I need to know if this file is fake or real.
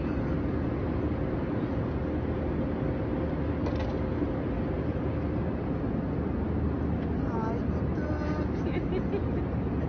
real